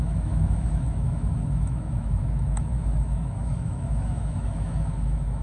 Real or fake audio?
fake